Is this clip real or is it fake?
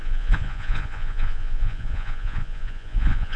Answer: fake